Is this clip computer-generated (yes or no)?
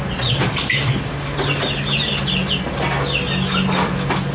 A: no